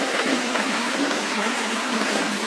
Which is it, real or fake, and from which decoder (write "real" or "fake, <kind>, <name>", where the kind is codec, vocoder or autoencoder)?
fake, codec, SNAC